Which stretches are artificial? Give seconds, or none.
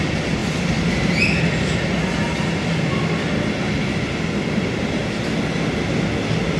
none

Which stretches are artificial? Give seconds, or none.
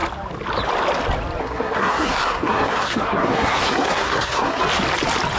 1.4-4.6 (codec, SNAC)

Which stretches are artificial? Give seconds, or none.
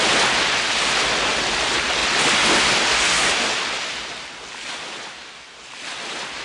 none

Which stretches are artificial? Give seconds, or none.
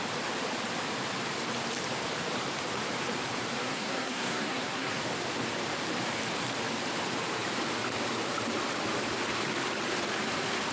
3.6-5.0 (codec, SNAC)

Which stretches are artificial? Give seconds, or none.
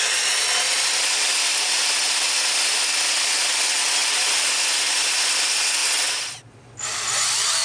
none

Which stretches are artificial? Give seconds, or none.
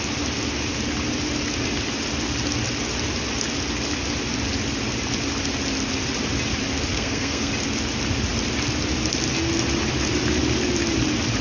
6.9-7.5 (codec, SNAC)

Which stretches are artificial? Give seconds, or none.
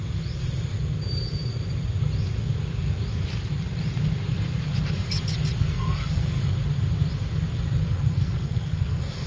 5.6-6.4 (codec, SNAC); 7.8-9.3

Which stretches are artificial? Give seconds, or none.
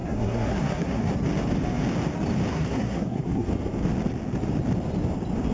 0.0-1.1 (codec, SNAC); 2.5-3.5